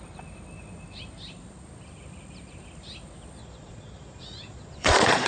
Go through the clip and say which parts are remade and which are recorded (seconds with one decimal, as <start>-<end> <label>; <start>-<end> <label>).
0.0-3.4 recorded; 3.4-5.3 remade